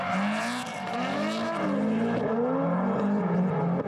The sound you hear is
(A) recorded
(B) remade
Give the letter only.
A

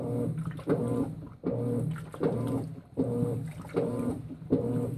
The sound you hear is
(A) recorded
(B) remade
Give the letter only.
A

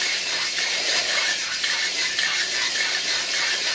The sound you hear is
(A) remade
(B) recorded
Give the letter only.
A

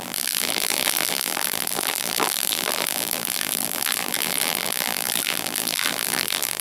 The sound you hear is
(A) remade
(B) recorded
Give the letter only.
A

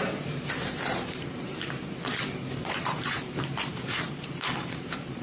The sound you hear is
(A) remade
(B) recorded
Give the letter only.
A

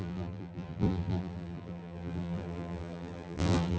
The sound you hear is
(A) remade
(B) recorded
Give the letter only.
A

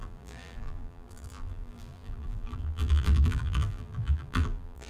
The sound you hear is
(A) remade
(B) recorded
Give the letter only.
A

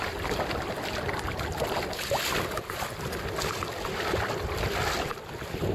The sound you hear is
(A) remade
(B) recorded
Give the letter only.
B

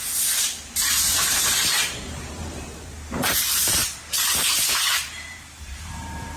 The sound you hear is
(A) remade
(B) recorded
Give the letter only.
A